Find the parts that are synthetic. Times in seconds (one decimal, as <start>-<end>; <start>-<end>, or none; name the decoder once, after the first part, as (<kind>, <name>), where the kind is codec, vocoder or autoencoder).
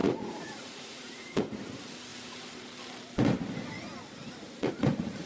0.0-1.4 (vocoder, Vocos); 4.2-5.3